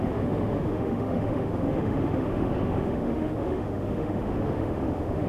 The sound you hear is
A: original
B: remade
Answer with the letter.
B